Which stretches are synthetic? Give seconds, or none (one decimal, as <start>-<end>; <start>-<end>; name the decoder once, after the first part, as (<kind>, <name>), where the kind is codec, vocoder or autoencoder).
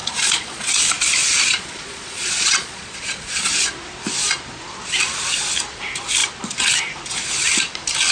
0.0-0.7 (vocoder, Vocos); 1.2-3.5